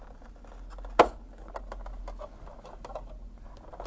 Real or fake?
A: real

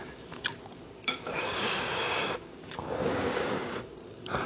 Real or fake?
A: fake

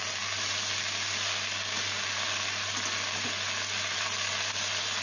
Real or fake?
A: real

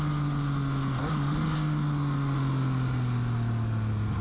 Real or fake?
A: real